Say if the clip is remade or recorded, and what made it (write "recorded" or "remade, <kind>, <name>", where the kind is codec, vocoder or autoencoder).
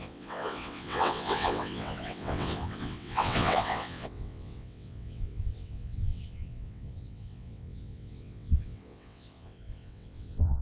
remade, vocoder, WaveNeXt